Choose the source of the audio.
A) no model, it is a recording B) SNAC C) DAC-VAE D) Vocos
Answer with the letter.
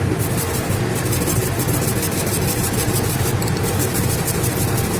A